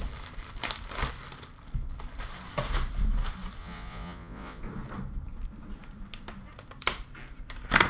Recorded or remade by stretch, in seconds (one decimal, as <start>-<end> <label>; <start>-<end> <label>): 0.0-3.6 recorded; 3.6-4.6 remade; 4.6-7.9 recorded